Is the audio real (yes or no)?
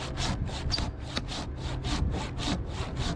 yes